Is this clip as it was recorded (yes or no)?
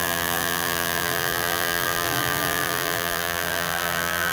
no